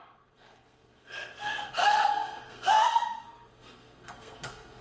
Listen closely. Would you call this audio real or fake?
fake